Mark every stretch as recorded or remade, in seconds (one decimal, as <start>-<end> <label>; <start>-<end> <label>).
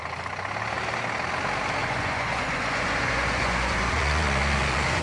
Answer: 0.0-1.8 recorded; 1.8-5.0 remade